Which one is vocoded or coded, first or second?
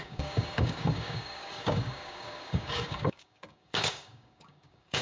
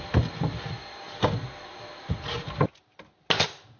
first